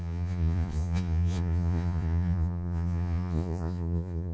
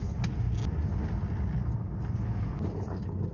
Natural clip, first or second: second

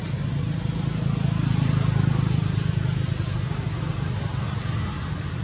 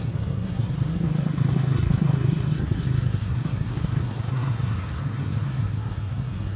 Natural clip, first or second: first